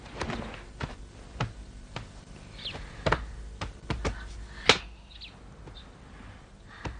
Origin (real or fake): real